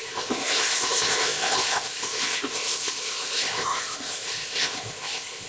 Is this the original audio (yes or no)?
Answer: no